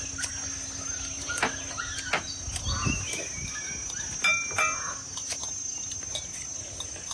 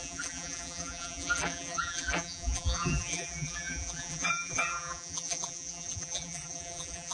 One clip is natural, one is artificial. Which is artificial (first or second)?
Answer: second